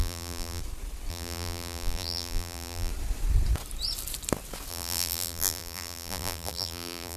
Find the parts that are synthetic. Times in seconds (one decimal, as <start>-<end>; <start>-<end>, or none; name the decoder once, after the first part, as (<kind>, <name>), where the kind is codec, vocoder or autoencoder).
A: 0.0-0.6 (vocoder, BigVGAN v2); 1.1-2.9; 4.7-7.2